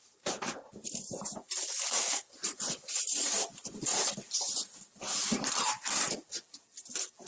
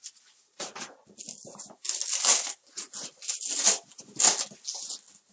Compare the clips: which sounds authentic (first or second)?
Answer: second